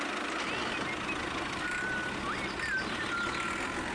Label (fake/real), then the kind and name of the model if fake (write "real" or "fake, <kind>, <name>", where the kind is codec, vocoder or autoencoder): real